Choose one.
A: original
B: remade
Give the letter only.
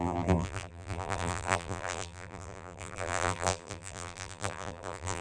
B